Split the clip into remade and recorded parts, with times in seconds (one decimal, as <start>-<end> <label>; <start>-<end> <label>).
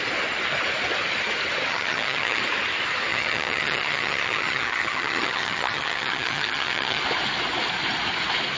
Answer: 0.0-1.7 recorded; 1.7-2.4 remade; 2.4-3.1 recorded; 3.1-7.0 remade; 7.0-8.6 recorded